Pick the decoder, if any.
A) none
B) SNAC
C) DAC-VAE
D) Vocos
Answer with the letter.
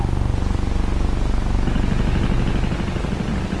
A